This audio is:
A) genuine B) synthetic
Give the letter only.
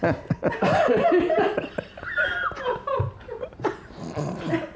A